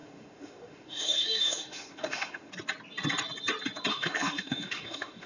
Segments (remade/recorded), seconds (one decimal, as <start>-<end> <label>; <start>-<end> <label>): 0.0-2.5 remade; 2.5-3.9 recorded; 3.9-5.3 remade